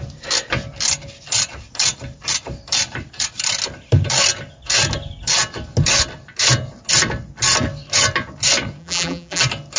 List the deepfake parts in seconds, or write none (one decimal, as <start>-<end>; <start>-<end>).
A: 8.8-9.4